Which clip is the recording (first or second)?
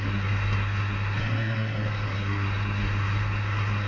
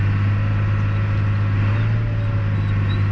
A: second